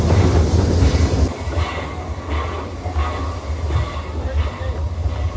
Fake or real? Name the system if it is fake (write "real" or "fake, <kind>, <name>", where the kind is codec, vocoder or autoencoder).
real